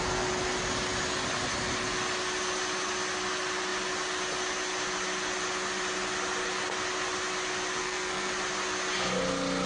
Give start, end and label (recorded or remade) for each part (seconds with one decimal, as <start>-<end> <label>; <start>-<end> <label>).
0.0-7.8 recorded; 7.8-8.3 remade; 8.3-9.7 recorded